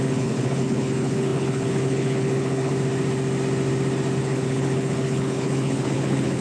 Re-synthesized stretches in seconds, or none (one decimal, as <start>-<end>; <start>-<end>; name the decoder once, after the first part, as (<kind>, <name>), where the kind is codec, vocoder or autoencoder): 0.0-2.7 (codec, HILCodec); 4.2-6.4